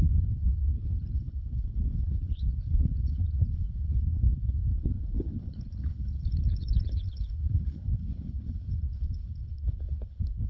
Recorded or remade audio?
remade